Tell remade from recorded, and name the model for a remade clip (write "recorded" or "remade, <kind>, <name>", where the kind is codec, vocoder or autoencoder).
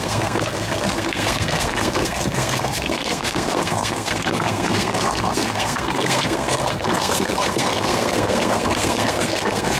remade, codec, SNAC